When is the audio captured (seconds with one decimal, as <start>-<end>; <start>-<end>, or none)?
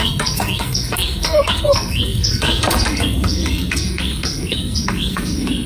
none